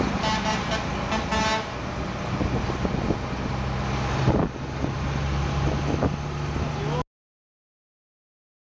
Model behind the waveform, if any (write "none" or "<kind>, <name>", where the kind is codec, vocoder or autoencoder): none